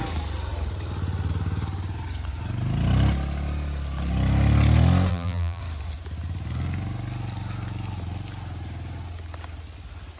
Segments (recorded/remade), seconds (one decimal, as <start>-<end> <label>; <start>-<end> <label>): 0.0-5.1 recorded; 5.1-5.6 remade; 5.6-10.2 recorded